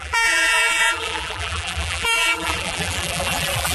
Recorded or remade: remade